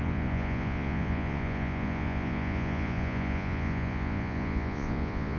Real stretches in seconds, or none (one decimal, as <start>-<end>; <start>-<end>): none